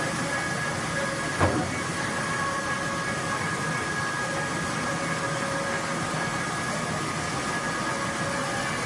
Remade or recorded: recorded